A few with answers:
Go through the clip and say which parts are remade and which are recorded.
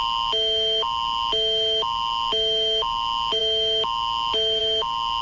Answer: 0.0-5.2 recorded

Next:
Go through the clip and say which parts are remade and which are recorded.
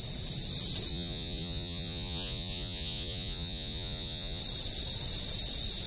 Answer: 0.0-0.9 recorded; 0.9-4.4 remade; 4.4-5.9 recorded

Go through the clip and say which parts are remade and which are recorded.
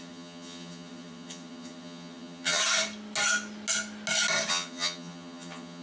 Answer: 0.0-2.6 remade; 2.6-4.5 recorded; 4.5-5.8 remade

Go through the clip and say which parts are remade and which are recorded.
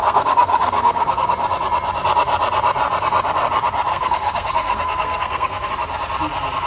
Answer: 0.0-1.3 remade; 1.3-3.9 recorded; 3.9-5.7 remade; 5.7-6.7 recorded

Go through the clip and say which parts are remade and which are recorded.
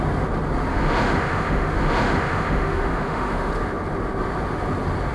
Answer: 0.0-0.7 recorded; 0.7-3.5 remade; 3.5-5.1 recorded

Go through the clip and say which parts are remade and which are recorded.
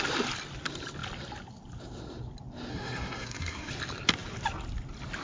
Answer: 0.0-2.7 recorded; 2.7-3.7 remade; 3.7-5.2 recorded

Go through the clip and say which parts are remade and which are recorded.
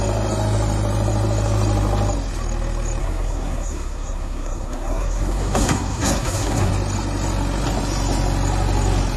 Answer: 0.0-3.0 recorded; 3.0-6.7 remade; 6.7-9.2 recorded